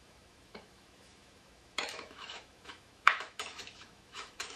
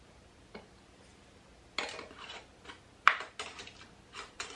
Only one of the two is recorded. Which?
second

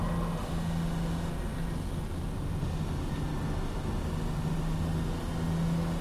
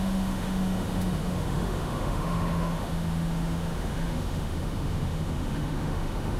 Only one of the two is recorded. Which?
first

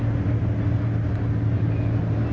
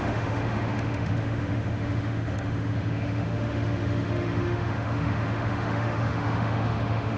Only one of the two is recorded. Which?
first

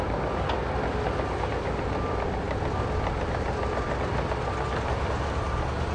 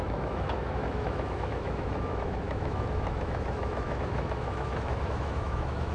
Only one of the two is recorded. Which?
first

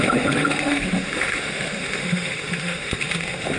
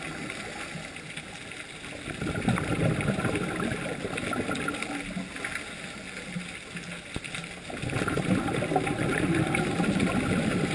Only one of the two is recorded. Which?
second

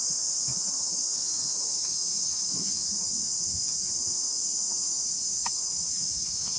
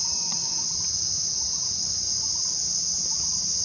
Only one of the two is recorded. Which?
second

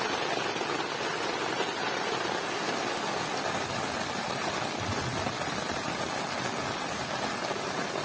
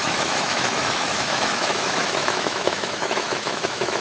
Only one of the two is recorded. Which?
first